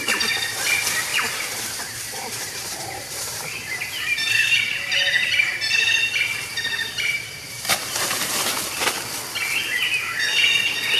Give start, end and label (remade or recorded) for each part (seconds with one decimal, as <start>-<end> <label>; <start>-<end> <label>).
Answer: 0.0-1.1 recorded; 1.1-4.6 remade; 4.6-6.5 recorded; 6.5-8.4 remade; 8.4-11.0 recorded